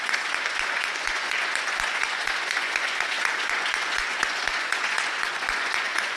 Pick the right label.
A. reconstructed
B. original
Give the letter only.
A